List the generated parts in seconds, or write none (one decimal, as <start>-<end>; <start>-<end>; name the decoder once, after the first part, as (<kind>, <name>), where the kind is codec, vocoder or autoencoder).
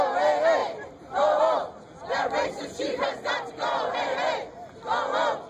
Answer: 0.6-1.4 (vocoder, BigVGAN v2); 2.0-4.2